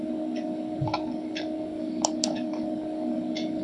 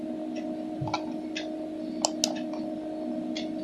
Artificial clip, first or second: first